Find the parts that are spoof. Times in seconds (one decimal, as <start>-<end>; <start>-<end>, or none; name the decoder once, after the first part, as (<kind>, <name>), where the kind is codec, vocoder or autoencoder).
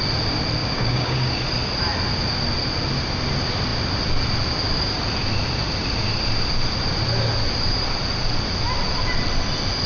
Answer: 0.6-1.4 (codec, DAC)